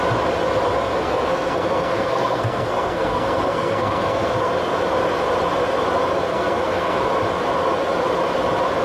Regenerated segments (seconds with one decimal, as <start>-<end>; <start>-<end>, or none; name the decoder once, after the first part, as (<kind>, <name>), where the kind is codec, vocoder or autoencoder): 1.0-4.5 (codec, SNAC); 6.3-7.0